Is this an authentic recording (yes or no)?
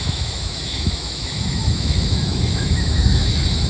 no